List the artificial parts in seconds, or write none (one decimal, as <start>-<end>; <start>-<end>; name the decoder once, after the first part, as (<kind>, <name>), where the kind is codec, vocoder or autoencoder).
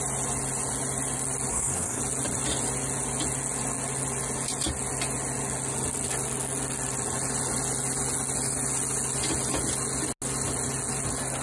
1.5-2.0 (codec, SNAC)